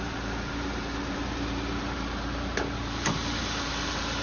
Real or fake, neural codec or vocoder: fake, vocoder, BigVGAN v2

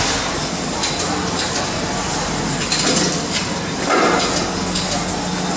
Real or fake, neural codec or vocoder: real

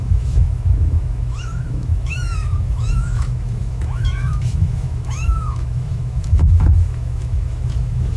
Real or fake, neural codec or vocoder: fake, autoencoder, DAC-VAE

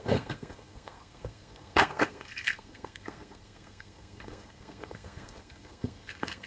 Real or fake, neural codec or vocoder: fake, codec, SNAC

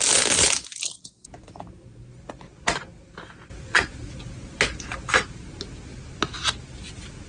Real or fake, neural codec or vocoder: real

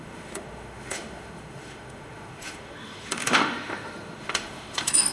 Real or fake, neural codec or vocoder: fake, autoencoder, DAC-VAE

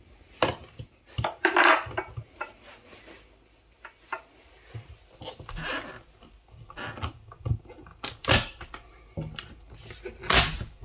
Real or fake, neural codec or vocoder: real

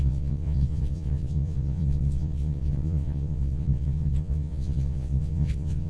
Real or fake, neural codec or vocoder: fake, vocoder, Vocos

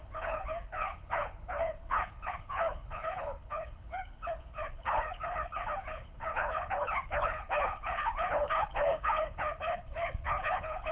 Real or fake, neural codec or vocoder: fake, codec, HILCodec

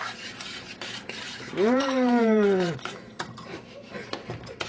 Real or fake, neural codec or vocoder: fake, vocoder, BigVGAN v2